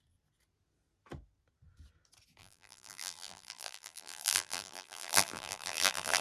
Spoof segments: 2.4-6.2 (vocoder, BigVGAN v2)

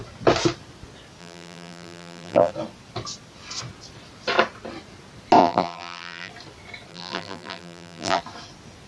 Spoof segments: 1.2-2.5 (vocoder, BigVGAN v2); 5.4-6.3; 6.9-8.2

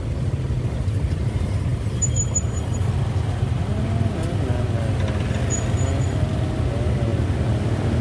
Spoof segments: none

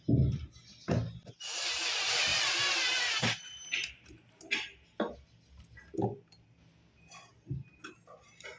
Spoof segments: none

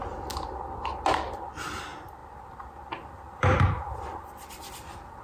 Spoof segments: 2.2-5.2 (vocoder, BigVGAN v2)